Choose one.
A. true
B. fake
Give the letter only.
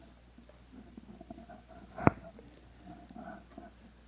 A